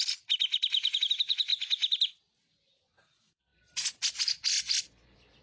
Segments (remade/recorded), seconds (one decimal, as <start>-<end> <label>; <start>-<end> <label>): 0.0-5.4 recorded